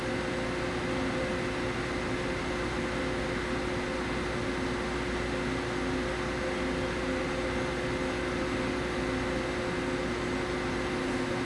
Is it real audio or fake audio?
real